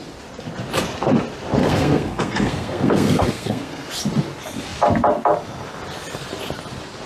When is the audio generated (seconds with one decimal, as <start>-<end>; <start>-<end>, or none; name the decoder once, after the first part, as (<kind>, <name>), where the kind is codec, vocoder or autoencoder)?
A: 1.6-3.9 (codec, SNAC)